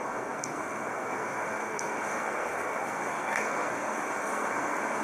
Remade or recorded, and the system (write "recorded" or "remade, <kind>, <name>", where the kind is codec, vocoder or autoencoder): remade, codec, SNAC